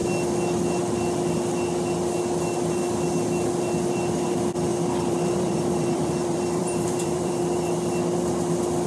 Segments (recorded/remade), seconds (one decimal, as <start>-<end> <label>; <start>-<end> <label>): 0.0-4.7 recorded; 4.7-7.4 remade; 7.4-8.9 recorded